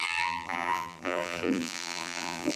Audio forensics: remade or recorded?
remade